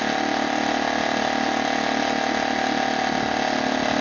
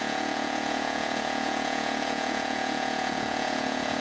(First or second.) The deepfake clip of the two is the second